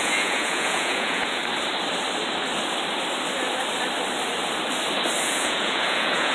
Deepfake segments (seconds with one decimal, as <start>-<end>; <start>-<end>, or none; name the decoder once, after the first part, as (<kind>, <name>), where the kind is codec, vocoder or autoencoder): 0.0-1.4 (vocoder, Vocos); 5.2-6.3